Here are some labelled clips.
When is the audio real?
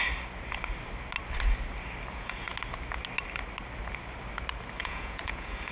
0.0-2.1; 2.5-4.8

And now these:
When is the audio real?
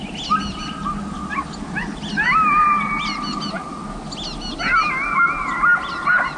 0.0-6.4